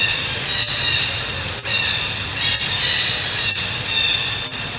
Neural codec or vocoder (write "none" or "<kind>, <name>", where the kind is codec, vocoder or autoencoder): none